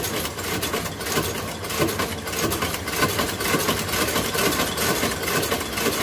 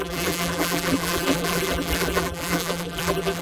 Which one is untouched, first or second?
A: first